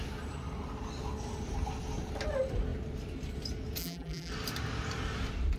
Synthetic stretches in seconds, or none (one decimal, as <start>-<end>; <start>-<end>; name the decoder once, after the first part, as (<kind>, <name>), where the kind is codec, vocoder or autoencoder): 3.8-4.3 (vocoder, BigVGAN v2)

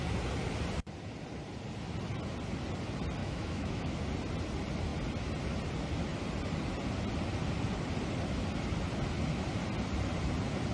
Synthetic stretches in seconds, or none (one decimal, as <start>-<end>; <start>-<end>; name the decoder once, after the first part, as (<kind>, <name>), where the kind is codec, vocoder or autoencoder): 3.2-4.0 (autoencoder, DAC-VAE)

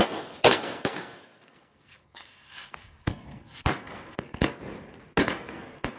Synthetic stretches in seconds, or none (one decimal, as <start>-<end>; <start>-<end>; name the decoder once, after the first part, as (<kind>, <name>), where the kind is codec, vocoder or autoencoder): 0.0-4.6 (codec, SNAC); 5.2-6.0

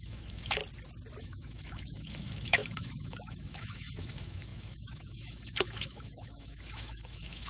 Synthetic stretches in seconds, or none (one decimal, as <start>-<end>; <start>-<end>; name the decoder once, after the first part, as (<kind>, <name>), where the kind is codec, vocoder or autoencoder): 0.0-0.6 (autoencoder, DAC-VAE); 1.2-7.5

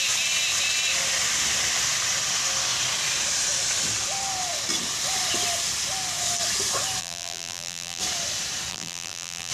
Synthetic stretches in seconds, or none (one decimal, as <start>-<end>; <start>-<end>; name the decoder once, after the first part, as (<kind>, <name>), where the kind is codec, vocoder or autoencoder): 7.0-8.0 (vocoder, BigVGAN v2); 8.7-9.5

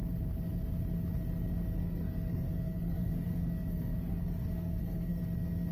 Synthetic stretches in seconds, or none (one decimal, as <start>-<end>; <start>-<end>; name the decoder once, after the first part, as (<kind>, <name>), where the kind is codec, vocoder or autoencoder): 1.8-5.2 (codec, SNAC)

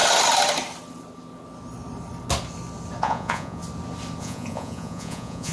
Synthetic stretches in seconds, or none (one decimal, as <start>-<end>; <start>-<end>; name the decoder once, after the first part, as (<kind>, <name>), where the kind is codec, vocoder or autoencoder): 3.0-3.6 (vocoder, Vocos); 4.2-5.5

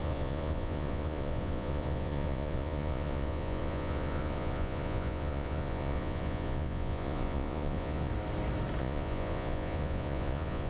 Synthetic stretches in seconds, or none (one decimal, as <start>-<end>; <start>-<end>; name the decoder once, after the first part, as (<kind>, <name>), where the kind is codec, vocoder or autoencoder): 0.0-8.1 (vocoder, Vocos); 8.8-10.7